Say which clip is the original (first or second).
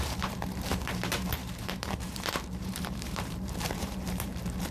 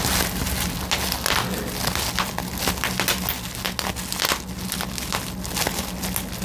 second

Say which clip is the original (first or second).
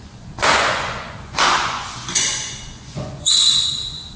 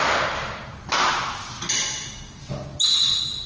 second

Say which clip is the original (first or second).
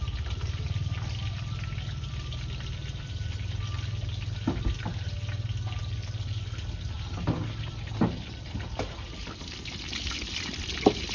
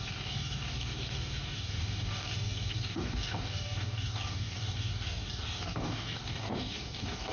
first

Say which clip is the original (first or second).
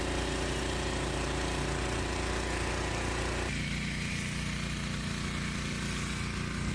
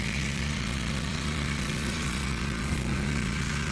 first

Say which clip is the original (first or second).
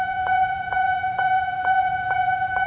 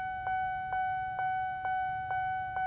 second